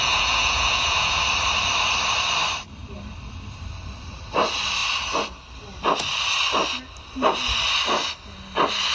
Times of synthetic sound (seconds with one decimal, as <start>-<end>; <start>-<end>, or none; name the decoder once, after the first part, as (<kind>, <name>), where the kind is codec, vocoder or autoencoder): 0.0-1.2 (vocoder, Vocos)

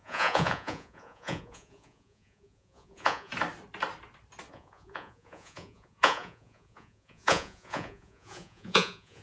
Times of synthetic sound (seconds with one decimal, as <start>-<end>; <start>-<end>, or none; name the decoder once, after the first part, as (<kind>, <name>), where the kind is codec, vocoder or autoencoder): 0.0-3.3 (vocoder, Vocos); 4.5-9.2

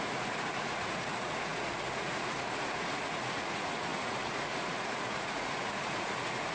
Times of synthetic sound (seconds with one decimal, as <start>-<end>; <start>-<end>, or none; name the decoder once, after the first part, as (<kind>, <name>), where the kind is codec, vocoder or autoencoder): 0.0-6.5 (vocoder, Vocos)